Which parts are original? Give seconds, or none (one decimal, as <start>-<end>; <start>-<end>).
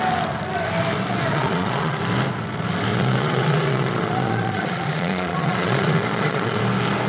0.0-1.3; 2.0-2.9; 6.6-7.1